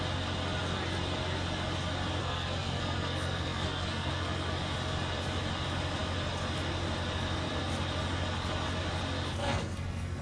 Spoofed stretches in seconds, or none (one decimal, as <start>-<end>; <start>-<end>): 2.2-4.5; 9.4-10.2